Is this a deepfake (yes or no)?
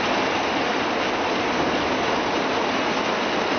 no